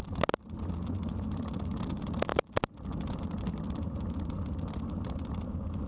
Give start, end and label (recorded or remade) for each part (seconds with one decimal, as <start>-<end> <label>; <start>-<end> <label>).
0.0-5.9 recorded